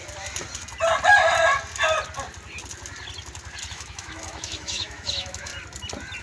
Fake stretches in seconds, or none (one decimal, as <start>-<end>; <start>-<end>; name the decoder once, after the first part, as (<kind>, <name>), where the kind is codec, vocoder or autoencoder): 3.7-5.5 (autoencoder, DAC-VAE)